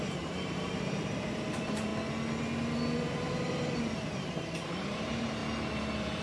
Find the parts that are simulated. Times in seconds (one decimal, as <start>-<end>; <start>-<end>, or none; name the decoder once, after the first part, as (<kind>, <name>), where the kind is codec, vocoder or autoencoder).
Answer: 0.0-1.9 (vocoder, BigVGAN v2); 3.0-5.4